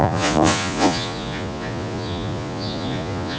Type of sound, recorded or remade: remade